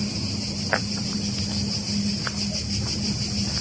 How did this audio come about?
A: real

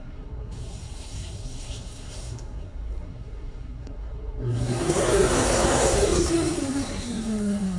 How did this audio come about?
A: fake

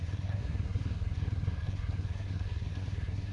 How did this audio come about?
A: fake